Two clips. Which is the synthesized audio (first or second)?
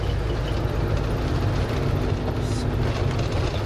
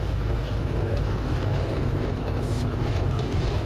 second